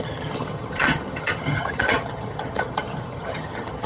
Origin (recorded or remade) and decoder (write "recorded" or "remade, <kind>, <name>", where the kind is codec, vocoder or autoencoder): remade, vocoder, HiFi-GAN